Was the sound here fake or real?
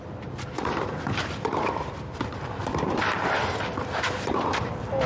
fake